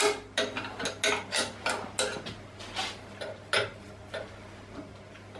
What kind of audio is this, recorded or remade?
recorded